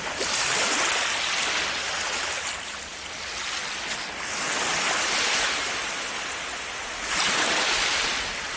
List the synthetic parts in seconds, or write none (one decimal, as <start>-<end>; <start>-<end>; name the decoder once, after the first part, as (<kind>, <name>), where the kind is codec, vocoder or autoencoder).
none